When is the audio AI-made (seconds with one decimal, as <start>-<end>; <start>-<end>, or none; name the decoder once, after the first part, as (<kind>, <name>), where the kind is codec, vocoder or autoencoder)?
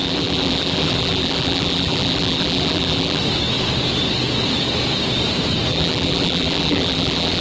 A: 0.0-3.2 (vocoder, BigVGAN v2); 5.7-7.4